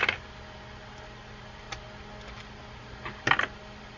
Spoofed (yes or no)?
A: no